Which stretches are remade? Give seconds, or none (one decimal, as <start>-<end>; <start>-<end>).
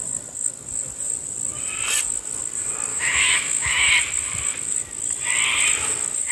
2.9-3.9